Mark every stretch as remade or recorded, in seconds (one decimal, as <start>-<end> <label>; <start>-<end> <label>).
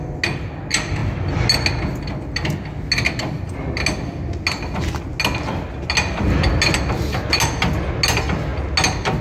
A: 0.0-9.2 recorded